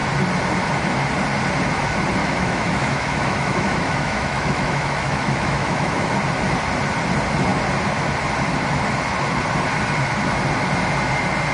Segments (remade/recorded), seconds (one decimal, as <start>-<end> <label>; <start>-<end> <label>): 0.0-2.2 recorded; 2.2-6.1 remade; 6.1-11.5 recorded